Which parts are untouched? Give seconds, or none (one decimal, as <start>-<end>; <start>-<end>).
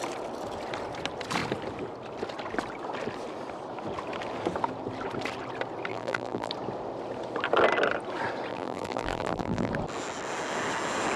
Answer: 0.0-5.9; 6.5-8.5; 9.7-11.2